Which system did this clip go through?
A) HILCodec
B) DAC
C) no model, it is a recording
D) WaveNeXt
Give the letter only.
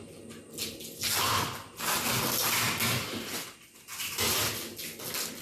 C